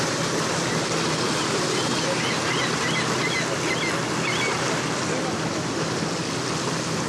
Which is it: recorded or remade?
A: recorded